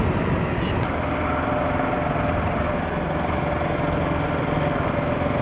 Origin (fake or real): real